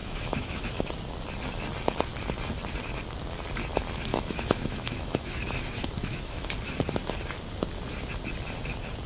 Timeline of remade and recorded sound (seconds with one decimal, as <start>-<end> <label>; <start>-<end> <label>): 0.0-0.8 remade; 0.8-4.1 recorded; 4.1-6.5 remade; 6.5-9.1 recorded